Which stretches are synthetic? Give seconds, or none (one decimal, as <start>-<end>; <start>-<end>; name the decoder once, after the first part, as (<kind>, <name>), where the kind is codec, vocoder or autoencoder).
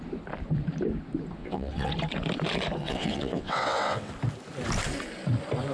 1.4-1.9 (vocoder, WaveNeXt); 2.8-4.1